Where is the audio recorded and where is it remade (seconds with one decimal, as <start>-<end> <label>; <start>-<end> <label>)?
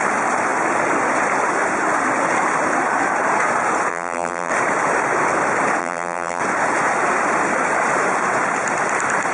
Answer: 0.0-3.9 recorded; 3.9-4.5 remade; 4.5-5.8 recorded; 5.8-6.4 remade; 6.4-9.3 recorded